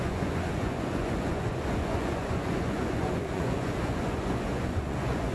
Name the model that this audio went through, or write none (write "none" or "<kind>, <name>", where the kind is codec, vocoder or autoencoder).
vocoder, Vocos